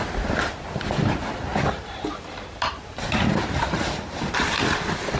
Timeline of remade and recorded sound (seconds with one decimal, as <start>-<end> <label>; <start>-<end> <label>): 0.0-1.5 recorded; 1.5-4.6 remade; 4.6-5.2 recorded